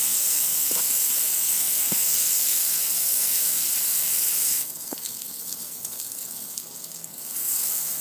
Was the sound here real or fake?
fake